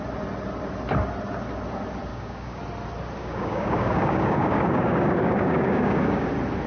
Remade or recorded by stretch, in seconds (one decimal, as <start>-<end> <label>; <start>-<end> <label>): 0.0-2.1 recorded; 2.1-2.6 remade; 2.6-3.2 recorded; 3.2-6.3 remade; 6.3-6.7 recorded